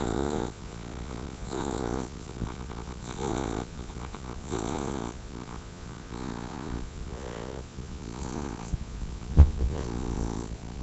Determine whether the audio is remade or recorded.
remade